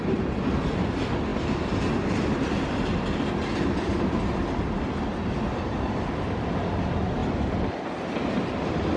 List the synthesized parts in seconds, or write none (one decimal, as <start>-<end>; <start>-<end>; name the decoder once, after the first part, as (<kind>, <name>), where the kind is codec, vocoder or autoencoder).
none